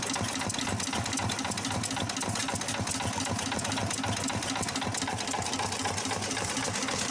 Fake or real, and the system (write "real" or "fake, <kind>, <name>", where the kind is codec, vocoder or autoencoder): real